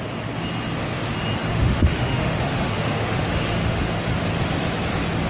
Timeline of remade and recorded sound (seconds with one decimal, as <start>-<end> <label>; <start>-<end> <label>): 0.0-1.5 recorded; 1.5-4.0 remade; 4.0-5.3 recorded